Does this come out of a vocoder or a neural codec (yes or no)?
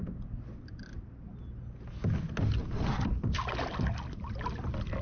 no